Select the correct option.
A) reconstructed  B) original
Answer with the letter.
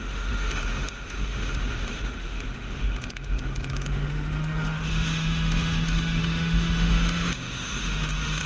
A